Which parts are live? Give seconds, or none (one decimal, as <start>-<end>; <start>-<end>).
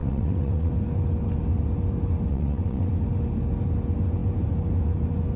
0.7-2.3; 2.9-5.4